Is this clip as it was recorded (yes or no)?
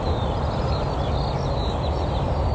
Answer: yes